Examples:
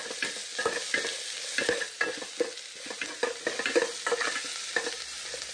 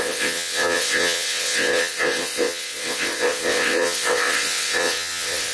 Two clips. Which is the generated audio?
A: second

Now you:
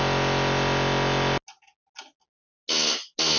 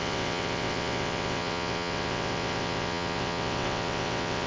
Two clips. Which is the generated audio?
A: second